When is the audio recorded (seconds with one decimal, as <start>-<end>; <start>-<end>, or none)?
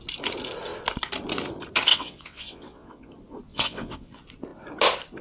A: 0.0-1.9; 3.1-3.5; 4.1-5.2